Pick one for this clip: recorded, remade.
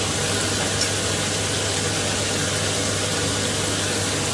recorded